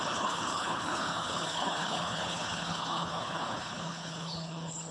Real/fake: fake